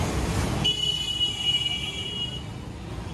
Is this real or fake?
real